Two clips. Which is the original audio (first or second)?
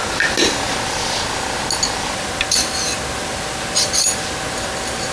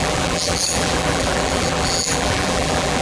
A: first